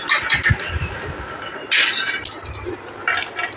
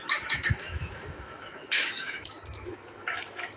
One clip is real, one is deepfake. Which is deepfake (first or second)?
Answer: second